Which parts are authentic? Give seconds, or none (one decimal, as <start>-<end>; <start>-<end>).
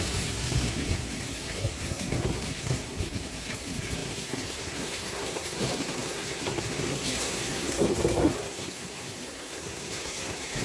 none